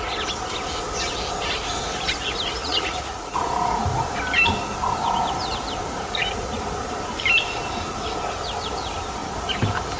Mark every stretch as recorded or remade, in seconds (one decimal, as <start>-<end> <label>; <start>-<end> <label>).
0.0-2.6 recorded; 2.6-3.3 remade; 3.3-10.0 recorded